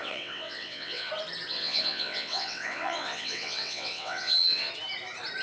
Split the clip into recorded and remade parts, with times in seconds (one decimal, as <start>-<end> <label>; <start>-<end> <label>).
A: 0.0-1.1 remade; 1.1-1.5 recorded; 1.5-4.7 remade; 4.7-5.4 recorded